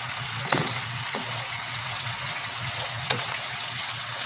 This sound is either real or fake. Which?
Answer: fake